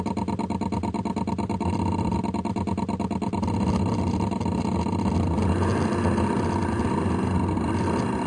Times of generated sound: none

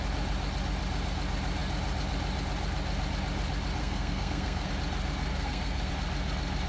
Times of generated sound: 3.8-4.7 (codec, SNAC); 5.3-5.9

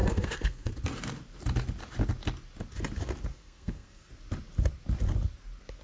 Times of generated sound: 0.0-0.7 (codec, SNAC); 3.3-4.1

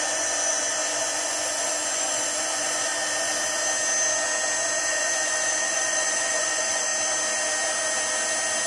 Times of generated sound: 0.0-2.9 (vocoder, Vocos); 4.8-6.9

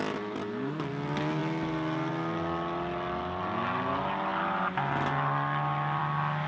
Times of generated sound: none